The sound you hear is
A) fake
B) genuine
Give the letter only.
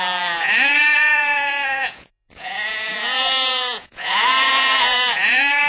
A